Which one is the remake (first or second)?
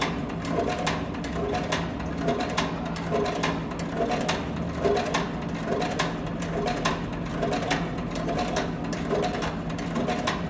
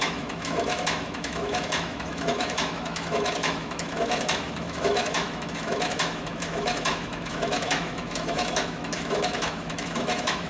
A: second